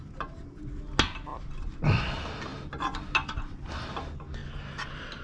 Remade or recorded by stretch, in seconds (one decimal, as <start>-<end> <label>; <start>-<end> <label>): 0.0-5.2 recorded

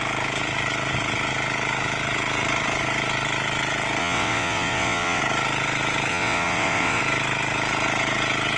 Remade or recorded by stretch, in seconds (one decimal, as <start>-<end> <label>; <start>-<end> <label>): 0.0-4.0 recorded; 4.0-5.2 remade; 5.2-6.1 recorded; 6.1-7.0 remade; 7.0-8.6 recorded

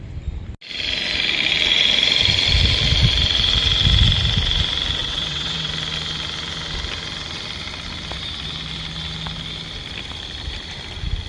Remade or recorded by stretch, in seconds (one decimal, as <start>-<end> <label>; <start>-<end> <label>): 0.0-5.0 recorded; 5.0-5.7 remade; 5.7-11.3 recorded